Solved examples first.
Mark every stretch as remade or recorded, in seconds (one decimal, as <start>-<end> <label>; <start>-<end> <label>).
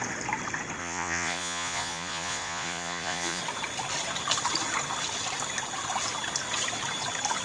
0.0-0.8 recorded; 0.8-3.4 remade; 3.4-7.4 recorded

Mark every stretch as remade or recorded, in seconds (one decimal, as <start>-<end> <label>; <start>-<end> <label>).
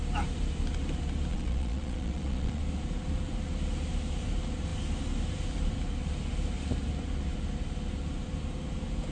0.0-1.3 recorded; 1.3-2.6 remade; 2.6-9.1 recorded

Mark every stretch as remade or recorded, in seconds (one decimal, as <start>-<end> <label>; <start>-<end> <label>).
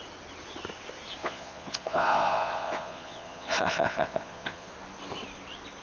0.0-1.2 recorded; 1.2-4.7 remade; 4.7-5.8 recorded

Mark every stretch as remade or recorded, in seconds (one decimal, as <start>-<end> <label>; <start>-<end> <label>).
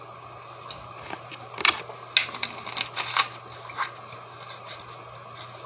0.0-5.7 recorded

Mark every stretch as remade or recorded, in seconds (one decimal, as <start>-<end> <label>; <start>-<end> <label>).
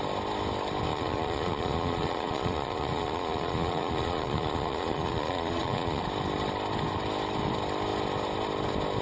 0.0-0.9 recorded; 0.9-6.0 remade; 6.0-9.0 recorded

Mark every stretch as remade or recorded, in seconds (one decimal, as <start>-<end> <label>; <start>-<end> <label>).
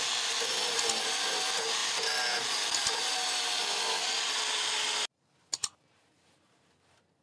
0.0-7.2 recorded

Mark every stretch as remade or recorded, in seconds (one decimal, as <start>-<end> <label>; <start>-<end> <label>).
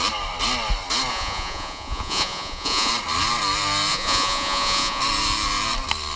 0.0-1.1 recorded; 1.1-2.9 remade; 2.9-3.9 recorded; 3.9-5.0 remade; 5.0-6.2 recorded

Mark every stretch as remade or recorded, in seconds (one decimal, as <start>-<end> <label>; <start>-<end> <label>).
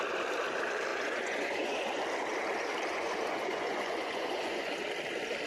0.0-0.9 recorded; 0.9-2.0 remade; 2.0-2.9 recorded; 2.9-4.7 remade; 4.7-5.5 recorded